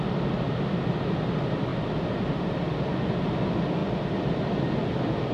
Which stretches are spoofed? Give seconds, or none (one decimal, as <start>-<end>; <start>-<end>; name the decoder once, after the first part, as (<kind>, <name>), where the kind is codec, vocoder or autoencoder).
1.7-2.7 (vocoder, BigVGAN v2); 3.8-4.7